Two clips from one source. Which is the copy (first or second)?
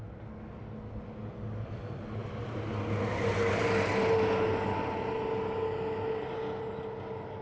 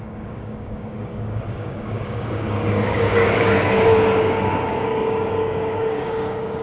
second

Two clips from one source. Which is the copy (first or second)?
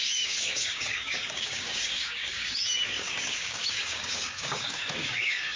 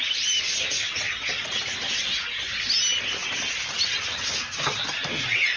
first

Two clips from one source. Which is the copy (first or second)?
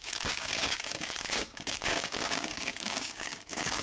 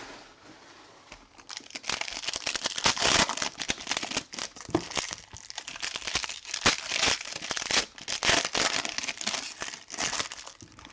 first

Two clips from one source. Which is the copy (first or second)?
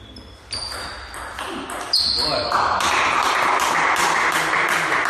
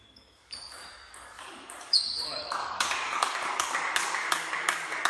second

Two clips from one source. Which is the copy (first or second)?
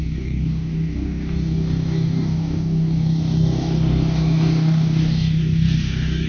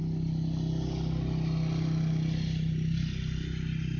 first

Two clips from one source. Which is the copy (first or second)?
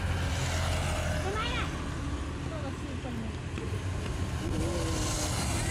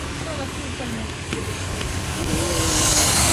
second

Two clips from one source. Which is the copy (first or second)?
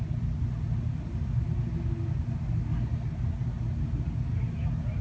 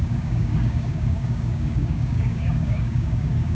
second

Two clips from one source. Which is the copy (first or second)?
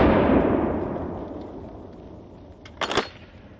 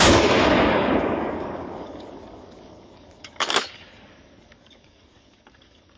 second